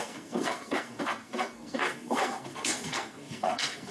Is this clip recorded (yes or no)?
no